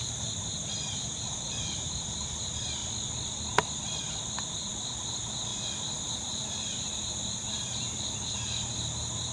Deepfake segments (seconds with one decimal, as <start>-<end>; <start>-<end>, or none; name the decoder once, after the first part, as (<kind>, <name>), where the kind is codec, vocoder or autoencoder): 0.0-2.8 (vocoder, BigVGAN v2); 4.2-9.3